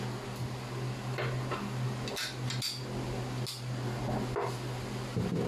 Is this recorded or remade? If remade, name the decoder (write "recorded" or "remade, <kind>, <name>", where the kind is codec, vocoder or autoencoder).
recorded